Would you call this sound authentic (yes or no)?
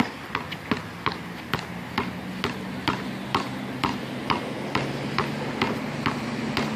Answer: yes